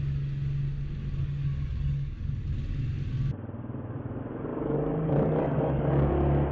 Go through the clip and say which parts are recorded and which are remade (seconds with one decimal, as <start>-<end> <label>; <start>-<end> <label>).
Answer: 0.0-1.2 recorded; 1.2-2.3 remade; 2.3-4.5 recorded; 4.5-6.1 remade; 6.1-6.5 recorded